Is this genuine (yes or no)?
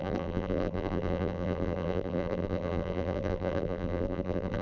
no